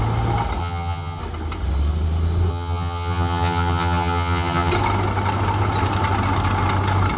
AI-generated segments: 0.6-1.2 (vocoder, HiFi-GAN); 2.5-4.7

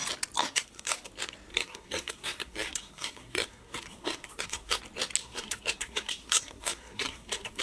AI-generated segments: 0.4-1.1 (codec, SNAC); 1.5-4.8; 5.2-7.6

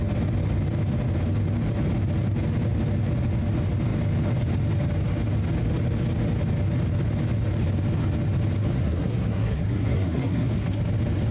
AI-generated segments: 8.7-10.8 (codec, SNAC)

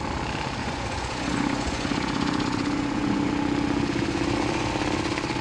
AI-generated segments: 0.6-3.3 (vocoder, Vocos)

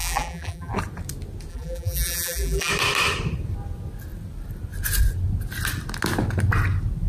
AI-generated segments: 0.0-0.7 (vocoder, BigVGAN v2); 1.5-2.7